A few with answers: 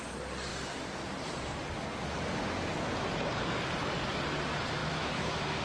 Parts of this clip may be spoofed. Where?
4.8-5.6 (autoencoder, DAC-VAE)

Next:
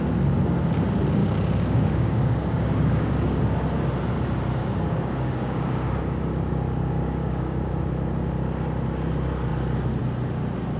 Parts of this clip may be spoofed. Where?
1.2-3.4 (codec, DAC); 4.6-6.0; 7.2-7.7